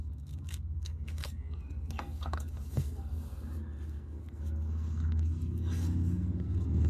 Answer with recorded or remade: remade